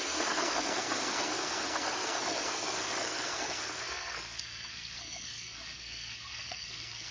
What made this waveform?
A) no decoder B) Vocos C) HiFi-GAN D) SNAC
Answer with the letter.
D